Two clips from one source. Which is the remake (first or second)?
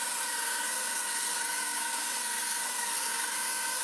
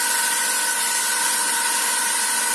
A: first